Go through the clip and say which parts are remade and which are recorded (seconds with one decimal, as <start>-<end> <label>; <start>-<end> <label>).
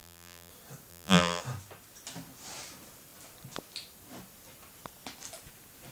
0.0-0.5 remade; 0.5-0.9 recorded; 0.9-1.4 remade; 1.4-5.9 recorded